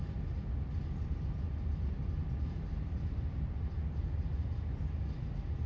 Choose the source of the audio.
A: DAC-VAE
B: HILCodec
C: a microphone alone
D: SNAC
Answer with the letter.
C